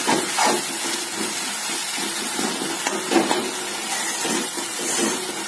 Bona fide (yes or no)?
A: yes